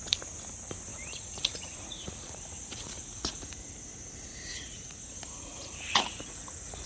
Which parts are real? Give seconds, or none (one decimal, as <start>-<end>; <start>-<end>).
0.0-0.9; 3.4-4.3; 5.0-5.4